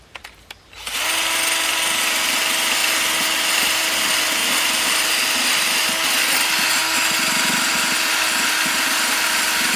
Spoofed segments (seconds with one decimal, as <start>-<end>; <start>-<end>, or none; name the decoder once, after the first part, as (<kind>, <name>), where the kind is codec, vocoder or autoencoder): 4.4-5.6 (vocoder, BigVGAN v2)